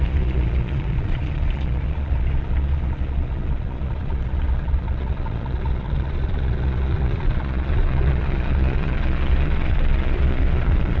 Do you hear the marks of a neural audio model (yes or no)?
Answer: yes